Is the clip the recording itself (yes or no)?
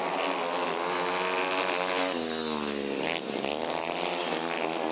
yes